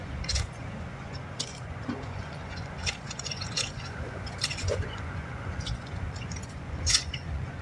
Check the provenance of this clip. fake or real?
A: fake